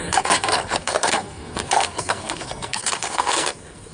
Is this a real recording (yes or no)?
no